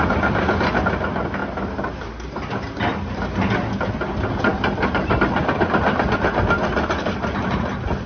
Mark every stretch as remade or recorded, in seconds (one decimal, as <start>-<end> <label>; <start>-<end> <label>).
0.0-4.5 recorded; 4.5-7.3 remade; 7.3-8.1 recorded